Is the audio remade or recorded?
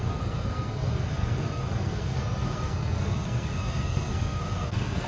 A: remade